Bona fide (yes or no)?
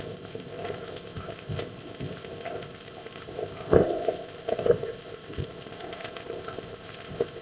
no